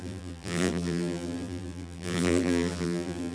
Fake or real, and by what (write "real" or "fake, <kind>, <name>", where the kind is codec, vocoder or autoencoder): fake, vocoder, BigVGAN v2